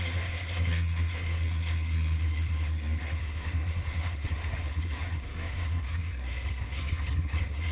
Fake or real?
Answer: fake